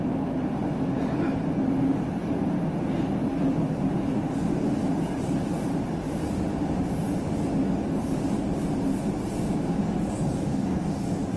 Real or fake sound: real